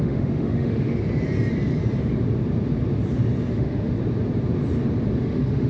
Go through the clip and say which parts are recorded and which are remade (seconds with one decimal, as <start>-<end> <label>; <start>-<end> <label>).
0.0-1.0 remade; 1.0-3.5 recorded; 3.5-3.9 remade; 3.9-5.2 recorded; 5.2-5.7 remade

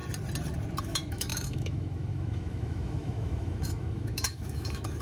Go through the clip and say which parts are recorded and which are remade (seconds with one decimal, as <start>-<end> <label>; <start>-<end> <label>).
0.0-0.8 recorded; 0.8-5.0 remade